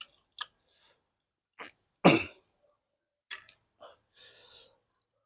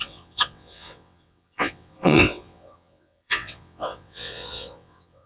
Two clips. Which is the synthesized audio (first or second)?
second